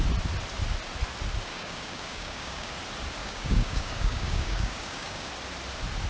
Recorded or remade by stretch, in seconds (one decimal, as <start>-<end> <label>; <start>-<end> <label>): 0.0-1.5 recorded; 1.5-2.7 remade; 2.7-3.2 recorded; 3.2-5.3 remade; 5.3-6.1 recorded